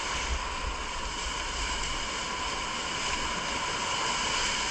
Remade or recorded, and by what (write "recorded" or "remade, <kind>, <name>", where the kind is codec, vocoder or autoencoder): recorded